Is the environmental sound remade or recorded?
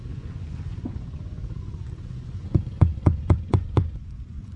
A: remade